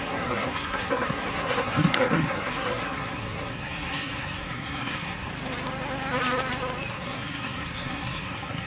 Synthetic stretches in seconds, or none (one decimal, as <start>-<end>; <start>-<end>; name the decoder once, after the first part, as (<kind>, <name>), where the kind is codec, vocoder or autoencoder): 0.0-5.3 (codec, SNAC); 6.9-8.7